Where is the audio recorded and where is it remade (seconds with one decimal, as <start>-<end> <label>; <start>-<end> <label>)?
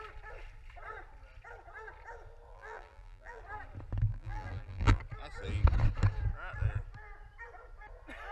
0.0-2.5 recorded; 2.5-3.4 remade; 3.4-4.1 recorded; 4.1-5.0 remade; 5.0-8.3 recorded